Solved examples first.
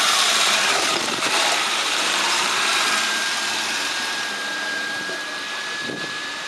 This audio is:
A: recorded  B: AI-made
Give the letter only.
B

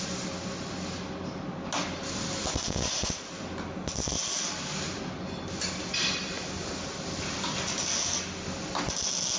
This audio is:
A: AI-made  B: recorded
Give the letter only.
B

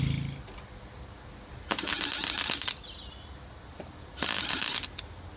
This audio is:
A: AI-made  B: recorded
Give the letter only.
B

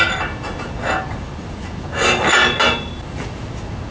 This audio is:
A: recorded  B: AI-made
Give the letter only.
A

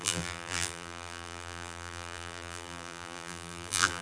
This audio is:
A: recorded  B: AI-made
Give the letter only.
B